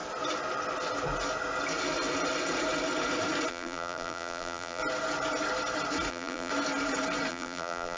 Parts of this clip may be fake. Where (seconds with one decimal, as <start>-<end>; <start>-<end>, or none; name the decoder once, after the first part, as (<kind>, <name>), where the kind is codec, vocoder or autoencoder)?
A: 3.5-4.8 (vocoder, BigVGAN v2); 6.1-6.5; 7.3-8.0